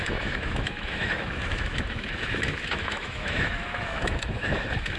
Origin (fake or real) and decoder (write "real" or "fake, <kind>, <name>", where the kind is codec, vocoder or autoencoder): fake, autoencoder, DAC-VAE